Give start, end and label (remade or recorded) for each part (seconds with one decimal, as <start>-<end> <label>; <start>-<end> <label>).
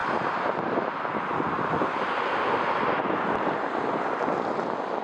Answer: 0.0-5.0 recorded